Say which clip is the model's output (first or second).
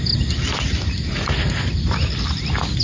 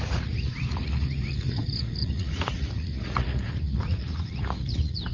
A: second